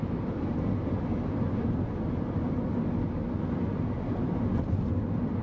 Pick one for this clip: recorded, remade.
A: recorded